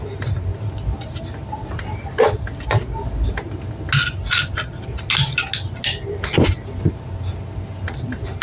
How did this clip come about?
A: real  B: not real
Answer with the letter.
A